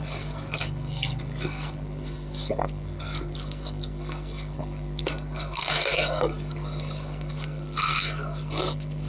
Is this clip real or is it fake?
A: fake